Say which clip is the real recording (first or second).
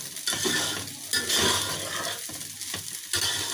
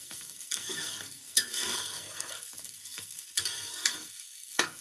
first